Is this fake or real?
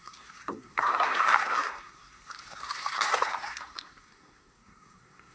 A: fake